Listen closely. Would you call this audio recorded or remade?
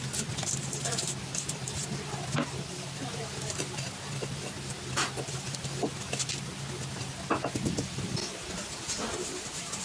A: recorded